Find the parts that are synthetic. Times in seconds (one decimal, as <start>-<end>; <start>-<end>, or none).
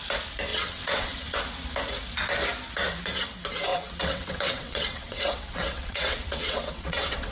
0.5-1.4; 3.7-7.3